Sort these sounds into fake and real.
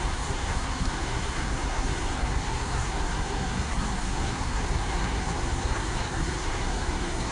fake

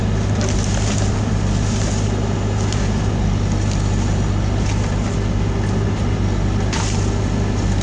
real